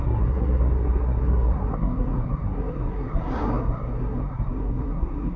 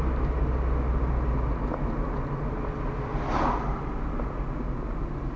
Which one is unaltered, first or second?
second